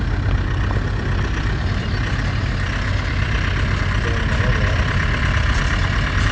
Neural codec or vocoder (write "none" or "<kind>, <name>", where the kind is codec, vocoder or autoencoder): none